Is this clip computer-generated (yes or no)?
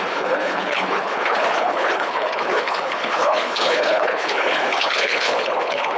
yes